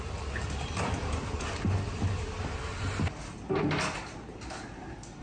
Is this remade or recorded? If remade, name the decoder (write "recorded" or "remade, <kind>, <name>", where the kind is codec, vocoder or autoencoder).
recorded